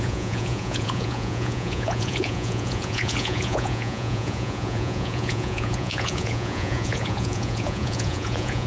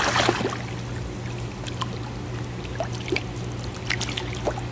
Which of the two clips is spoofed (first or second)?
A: first